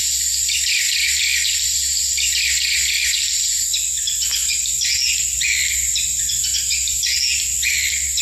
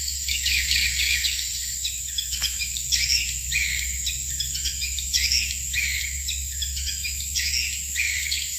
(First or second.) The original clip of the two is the first